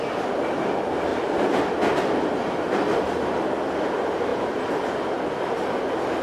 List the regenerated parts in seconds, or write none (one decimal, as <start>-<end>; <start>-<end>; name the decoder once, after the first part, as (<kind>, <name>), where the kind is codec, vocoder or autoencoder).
4.3-6.2 (vocoder, BigVGAN v2)